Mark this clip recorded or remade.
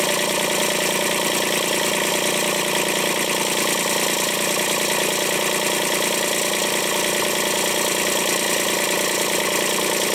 recorded